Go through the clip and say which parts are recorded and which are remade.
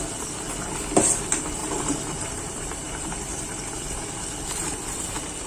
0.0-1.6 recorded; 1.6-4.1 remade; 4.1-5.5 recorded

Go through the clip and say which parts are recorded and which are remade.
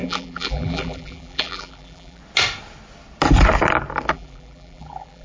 0.0-2.2 remade; 2.2-4.1 recorded; 4.1-5.2 remade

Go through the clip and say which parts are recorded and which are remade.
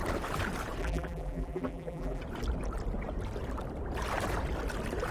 0.0-0.8 recorded; 0.8-2.2 remade; 2.2-5.1 recorded